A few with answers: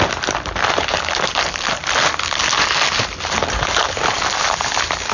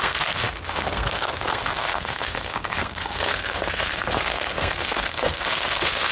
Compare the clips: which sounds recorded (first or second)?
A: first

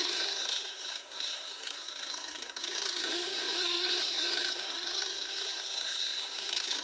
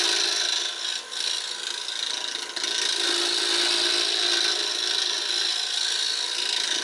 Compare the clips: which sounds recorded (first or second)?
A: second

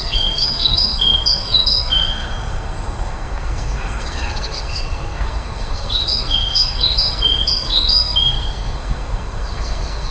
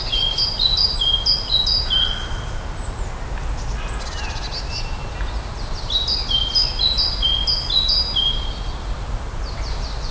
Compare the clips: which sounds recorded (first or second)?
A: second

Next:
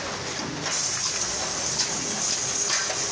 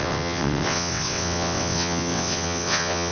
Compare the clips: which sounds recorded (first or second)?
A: first